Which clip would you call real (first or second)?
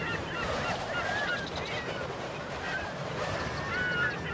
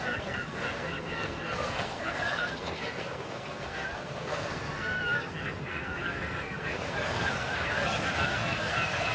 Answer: first